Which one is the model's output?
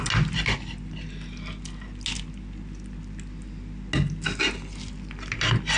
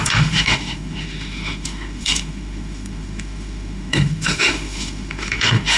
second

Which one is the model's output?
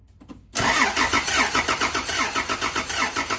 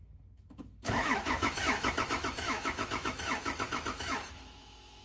second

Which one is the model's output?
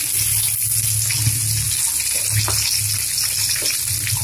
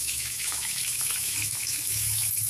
second